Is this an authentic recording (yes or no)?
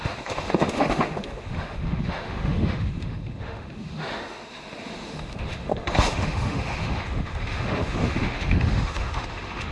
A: no